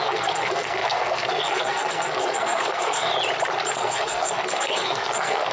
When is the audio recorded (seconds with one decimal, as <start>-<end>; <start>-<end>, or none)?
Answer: 3.1-3.7